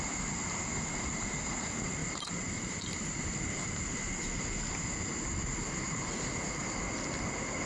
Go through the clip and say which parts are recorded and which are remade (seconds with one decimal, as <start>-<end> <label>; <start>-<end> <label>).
0.0-2.0 recorded; 2.0-4.3 remade; 4.3-5.5 recorded; 5.5-6.9 remade; 6.9-7.7 recorded